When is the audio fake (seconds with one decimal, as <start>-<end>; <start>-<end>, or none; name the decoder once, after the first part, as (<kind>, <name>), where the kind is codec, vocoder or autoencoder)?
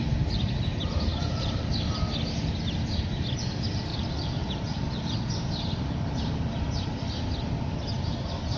1.1-1.7 (vocoder, BigVGAN v2); 3.9-6.1